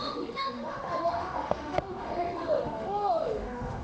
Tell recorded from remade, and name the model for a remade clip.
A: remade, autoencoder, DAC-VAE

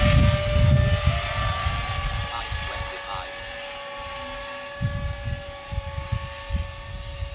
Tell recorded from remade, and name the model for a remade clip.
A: recorded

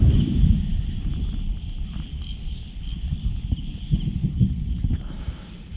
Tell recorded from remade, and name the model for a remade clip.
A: recorded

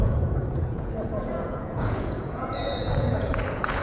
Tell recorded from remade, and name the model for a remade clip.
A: remade, vocoder, Vocos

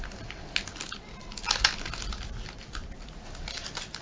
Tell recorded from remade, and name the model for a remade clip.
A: recorded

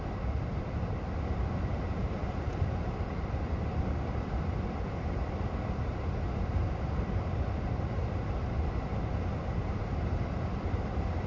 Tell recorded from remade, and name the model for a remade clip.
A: remade, vocoder, BigVGAN v2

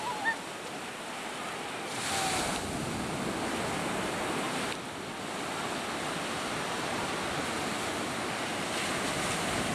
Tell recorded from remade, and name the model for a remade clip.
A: recorded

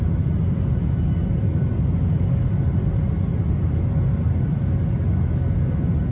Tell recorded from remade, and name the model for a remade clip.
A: recorded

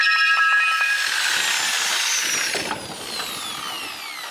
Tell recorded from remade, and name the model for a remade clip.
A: recorded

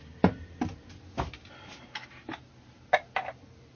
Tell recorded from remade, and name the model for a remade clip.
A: recorded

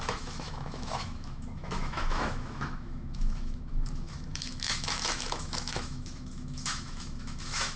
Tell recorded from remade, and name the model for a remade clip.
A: remade, autoencoder, DAC-VAE